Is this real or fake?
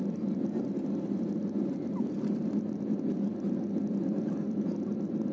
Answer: real